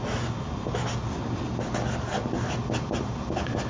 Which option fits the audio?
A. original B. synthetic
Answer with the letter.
A